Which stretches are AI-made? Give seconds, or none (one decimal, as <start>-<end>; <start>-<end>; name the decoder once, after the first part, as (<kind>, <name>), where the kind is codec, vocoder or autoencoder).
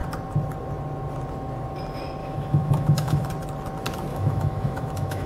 2.2-3.3 (autoencoder, DAC-VAE); 4.1-5.3